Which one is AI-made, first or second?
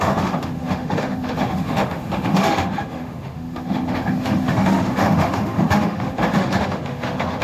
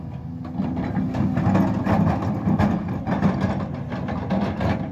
first